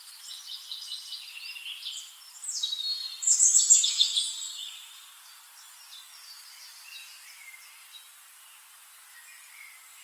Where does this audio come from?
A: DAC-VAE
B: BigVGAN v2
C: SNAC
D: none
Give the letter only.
D